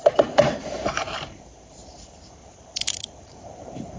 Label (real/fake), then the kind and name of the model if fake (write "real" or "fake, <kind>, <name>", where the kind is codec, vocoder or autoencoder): fake, vocoder, BigVGAN v2